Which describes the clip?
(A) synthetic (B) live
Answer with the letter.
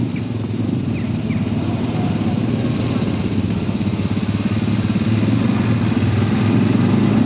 B